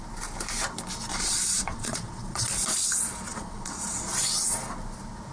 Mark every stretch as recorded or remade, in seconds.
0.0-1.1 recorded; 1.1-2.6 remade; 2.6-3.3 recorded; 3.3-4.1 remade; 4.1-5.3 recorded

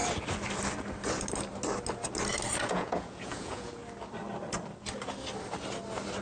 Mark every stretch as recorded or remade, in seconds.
0.0-2.7 recorded; 2.7-3.8 remade; 3.8-6.2 recorded

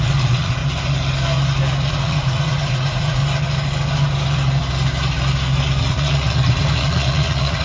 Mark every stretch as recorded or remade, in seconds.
0.0-0.6 remade; 0.6-1.9 recorded; 1.9-3.2 remade; 3.2-5.8 recorded; 5.8-7.6 remade